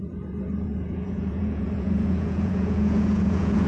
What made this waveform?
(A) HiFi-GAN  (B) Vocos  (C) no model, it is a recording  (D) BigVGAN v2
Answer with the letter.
B